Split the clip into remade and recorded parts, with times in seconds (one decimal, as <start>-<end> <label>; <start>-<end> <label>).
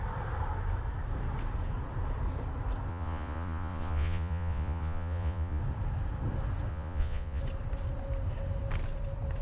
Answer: 0.0-2.9 recorded; 2.9-5.6 remade; 5.6-6.7 recorded; 6.7-7.4 remade; 7.4-9.4 recorded